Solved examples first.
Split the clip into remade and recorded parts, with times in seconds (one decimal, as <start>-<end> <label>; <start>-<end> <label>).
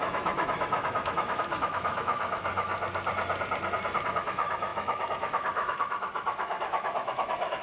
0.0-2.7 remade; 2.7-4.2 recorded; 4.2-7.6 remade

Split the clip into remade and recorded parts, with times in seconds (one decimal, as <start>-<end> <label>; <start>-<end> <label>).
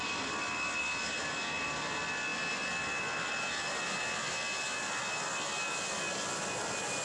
0.0-1.1 remade; 1.1-5.0 recorded; 5.0-5.8 remade; 5.8-7.0 recorded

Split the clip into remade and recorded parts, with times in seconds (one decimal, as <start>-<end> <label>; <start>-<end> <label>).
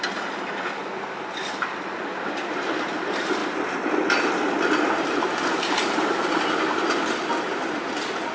0.0-8.3 recorded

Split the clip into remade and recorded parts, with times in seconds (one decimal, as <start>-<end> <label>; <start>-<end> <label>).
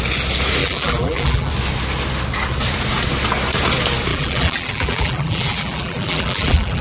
0.0-0.6 recorded; 0.6-1.5 remade; 1.5-4.1 recorded; 4.1-6.8 remade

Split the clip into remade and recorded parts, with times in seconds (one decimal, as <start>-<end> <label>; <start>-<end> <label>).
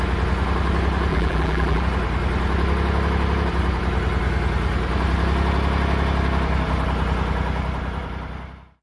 0.0-1.1 recorded; 1.1-1.8 remade; 1.8-8.8 recorded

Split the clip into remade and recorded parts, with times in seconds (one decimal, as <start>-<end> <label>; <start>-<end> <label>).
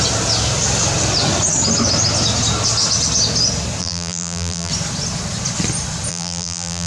0.0-3.8 recorded; 3.8-4.7 remade; 4.7-6.1 recorded; 6.1-6.9 remade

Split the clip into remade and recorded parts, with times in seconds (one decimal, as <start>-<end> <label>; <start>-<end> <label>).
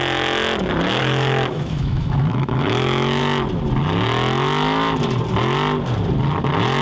0.0-1.0 recorded; 1.0-3.2 remade; 3.2-6.8 recorded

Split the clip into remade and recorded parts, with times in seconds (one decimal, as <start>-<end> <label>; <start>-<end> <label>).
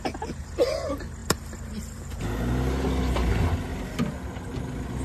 0.0-1.2 recorded; 1.2-2.2 remade; 2.2-3.7 recorded; 3.7-4.3 remade; 4.3-5.0 recorded